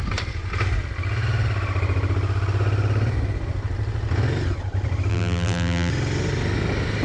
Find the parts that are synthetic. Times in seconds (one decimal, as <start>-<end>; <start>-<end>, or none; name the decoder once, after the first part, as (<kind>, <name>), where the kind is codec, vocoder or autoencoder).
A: 5.1-5.9 (vocoder, BigVGAN v2)